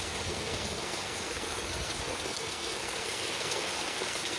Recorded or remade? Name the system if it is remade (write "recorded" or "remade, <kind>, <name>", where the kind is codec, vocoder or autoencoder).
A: remade, codec, SNAC